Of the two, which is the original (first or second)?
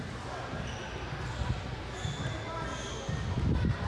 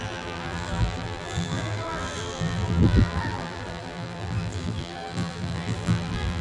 first